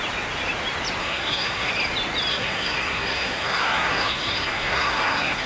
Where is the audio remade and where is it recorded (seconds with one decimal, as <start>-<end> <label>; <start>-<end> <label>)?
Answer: 0.0-1.0 recorded; 1.0-1.7 remade; 1.7-2.3 recorded; 2.3-5.5 remade